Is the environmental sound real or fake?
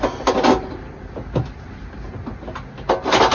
real